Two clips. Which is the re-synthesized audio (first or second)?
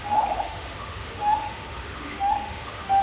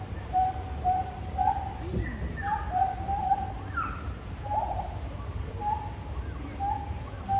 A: first